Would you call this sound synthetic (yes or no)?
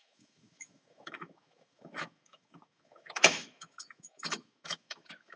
yes